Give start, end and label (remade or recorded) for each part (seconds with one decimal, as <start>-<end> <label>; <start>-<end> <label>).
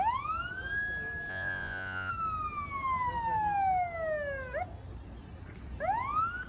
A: 0.0-1.3 recorded; 1.3-2.1 remade; 2.1-6.5 recorded